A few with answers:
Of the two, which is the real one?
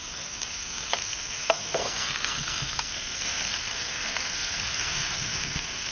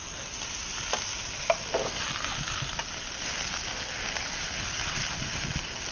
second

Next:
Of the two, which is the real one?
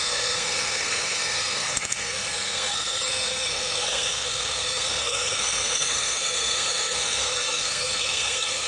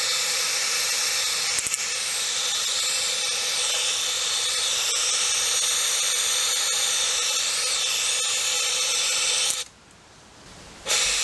second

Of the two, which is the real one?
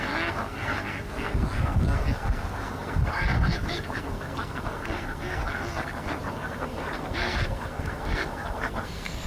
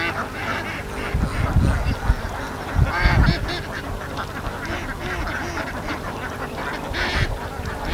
second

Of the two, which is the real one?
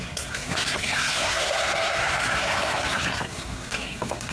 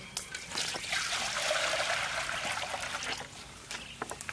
second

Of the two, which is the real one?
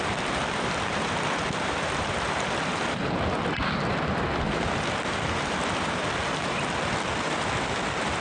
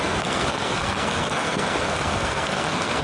first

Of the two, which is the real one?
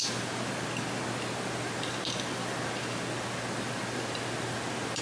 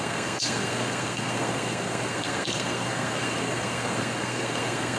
first